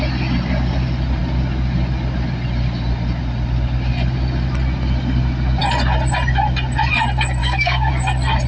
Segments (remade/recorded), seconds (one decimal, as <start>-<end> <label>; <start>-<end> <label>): 0.0-7.4 recorded; 7.4-7.9 remade; 7.9-8.5 recorded